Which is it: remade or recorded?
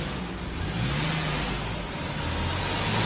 recorded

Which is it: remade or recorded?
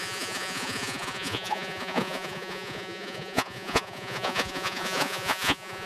remade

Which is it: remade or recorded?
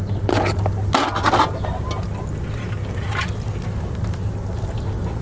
recorded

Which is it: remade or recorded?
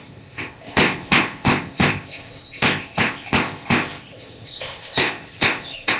remade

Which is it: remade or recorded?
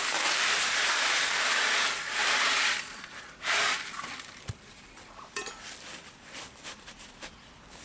remade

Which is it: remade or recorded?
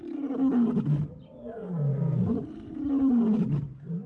recorded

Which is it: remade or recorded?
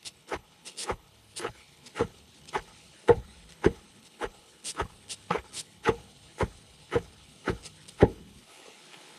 remade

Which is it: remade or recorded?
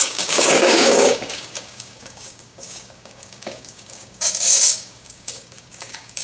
remade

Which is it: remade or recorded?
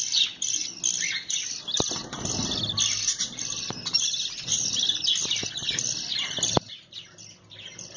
recorded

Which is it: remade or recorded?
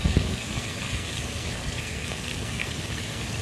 remade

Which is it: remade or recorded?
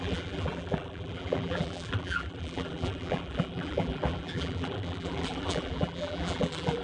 remade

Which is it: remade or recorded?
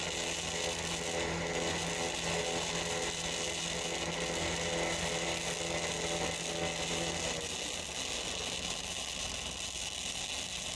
recorded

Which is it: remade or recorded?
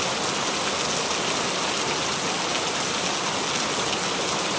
recorded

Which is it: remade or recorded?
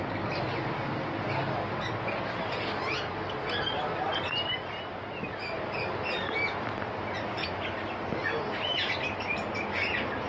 recorded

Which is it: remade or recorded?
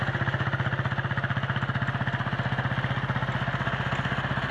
recorded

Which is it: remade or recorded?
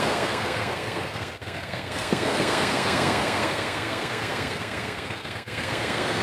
remade